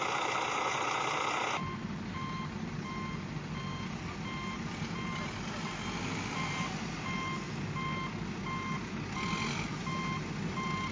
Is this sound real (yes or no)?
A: yes